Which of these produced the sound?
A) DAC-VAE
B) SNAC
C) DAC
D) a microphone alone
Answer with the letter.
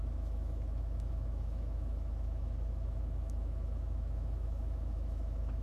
A